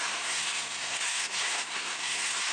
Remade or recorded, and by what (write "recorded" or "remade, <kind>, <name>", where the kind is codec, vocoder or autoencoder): remade, codec, SNAC